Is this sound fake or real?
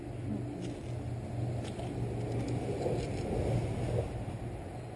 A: real